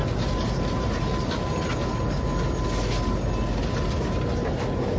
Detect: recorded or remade recorded